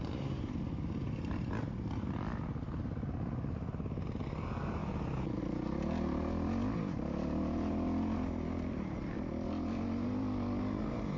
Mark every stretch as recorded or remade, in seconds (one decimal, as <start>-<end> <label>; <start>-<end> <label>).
0.0-11.2 recorded